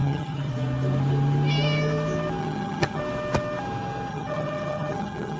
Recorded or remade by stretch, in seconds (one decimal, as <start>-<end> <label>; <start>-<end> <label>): 0.0-0.5 remade; 0.5-2.4 recorded; 2.4-3.0 remade; 3.0-4.1 recorded; 4.1-5.4 remade